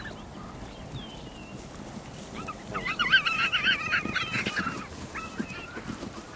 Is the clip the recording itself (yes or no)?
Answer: yes